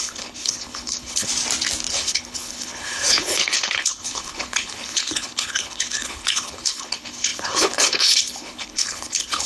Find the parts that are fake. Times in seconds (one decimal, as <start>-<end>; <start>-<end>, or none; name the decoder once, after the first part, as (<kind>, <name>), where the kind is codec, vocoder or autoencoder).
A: 0.0-1.3 (codec, HILCodec); 1.9-9.5